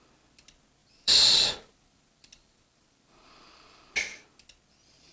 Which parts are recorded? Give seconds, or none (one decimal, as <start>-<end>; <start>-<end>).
0.0-0.8; 3.9-5.1